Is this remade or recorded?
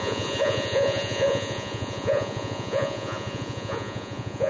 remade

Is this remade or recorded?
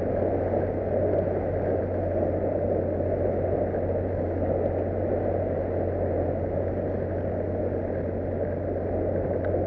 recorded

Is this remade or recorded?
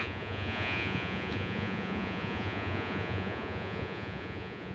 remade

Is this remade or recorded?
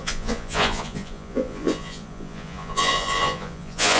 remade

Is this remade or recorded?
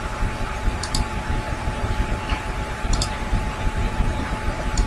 remade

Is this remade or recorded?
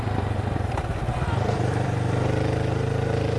remade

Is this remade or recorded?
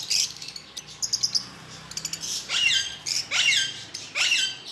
recorded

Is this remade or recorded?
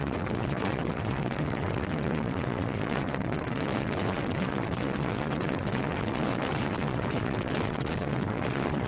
remade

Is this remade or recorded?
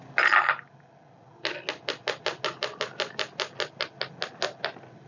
recorded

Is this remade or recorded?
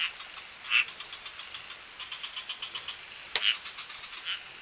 recorded